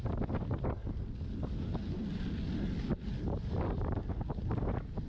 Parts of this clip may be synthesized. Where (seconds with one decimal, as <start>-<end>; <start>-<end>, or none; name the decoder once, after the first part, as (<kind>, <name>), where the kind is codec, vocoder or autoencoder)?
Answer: none